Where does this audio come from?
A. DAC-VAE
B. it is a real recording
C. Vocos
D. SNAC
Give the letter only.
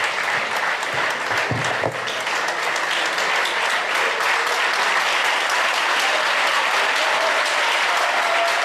B